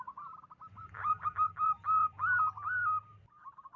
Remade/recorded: remade